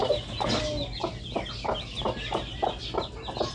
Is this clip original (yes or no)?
yes